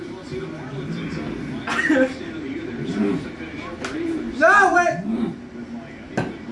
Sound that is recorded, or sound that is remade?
recorded